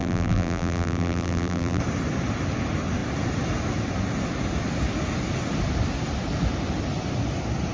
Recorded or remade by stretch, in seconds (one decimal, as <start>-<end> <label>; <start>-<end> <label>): 0.0-1.8 remade; 1.8-7.7 recorded